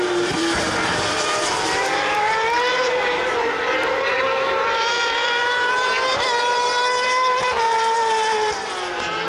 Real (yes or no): no